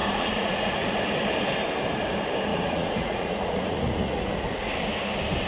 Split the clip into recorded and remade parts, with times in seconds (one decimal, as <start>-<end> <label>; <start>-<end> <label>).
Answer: 0.0-1.0 remade; 1.0-2.5 recorded; 2.5-4.7 remade; 4.7-5.5 recorded